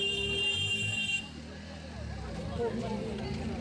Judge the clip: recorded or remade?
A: recorded